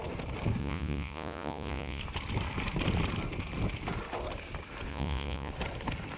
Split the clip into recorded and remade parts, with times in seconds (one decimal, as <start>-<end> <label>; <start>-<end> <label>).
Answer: 0.0-0.6 recorded; 0.6-2.0 remade; 2.0-4.9 recorded; 4.9-5.5 remade; 5.5-6.2 recorded